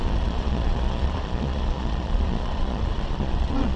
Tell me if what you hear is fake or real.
fake